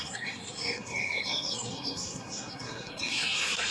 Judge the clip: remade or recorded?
remade